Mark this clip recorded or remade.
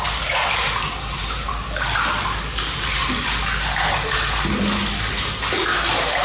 recorded